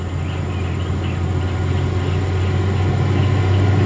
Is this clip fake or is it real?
real